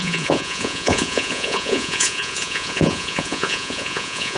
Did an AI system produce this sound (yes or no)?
yes